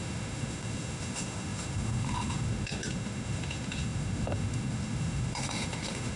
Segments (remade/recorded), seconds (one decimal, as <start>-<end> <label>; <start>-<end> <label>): 0.0-6.2 remade